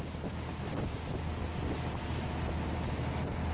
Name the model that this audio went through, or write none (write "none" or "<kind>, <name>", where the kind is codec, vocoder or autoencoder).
none